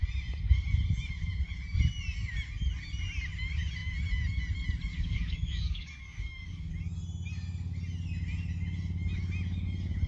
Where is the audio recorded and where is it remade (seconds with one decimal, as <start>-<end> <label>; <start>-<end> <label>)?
0.0-4.9 recorded; 4.9-6.7 remade; 6.7-10.1 recorded

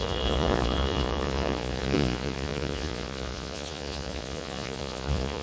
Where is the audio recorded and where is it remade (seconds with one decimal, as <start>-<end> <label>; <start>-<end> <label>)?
0.0-5.4 remade

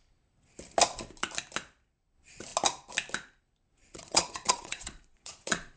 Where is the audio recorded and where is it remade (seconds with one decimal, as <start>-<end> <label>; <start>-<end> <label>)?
0.0-3.8 recorded; 3.8-5.8 remade

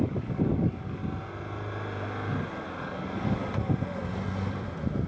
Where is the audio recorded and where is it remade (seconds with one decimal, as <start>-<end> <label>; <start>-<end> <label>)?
0.0-1.0 remade; 1.0-2.9 recorded; 2.9-3.4 remade; 3.4-5.1 recorded

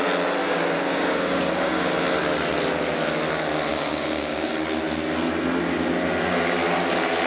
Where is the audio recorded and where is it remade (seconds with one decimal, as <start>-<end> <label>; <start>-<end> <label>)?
0.0-0.4 recorded; 0.4-1.9 remade; 1.9-3.7 recorded; 3.7-4.5 remade; 4.5-7.3 recorded

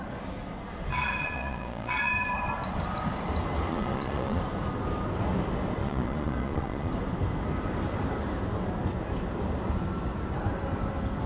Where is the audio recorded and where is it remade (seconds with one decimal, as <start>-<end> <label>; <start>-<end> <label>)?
0.0-0.9 recorded; 0.9-2.1 remade; 2.1-3.7 recorded; 3.7-4.4 remade; 4.4-5.8 recorded; 5.8-6.9 remade; 6.9-11.3 recorded